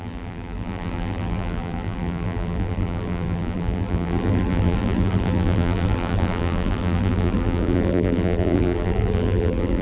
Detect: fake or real fake